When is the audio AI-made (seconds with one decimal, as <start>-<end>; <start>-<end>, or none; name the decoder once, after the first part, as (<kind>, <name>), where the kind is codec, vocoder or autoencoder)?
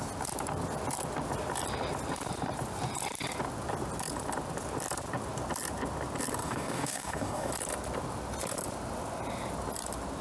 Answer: 6.4-7.5 (codec, DAC)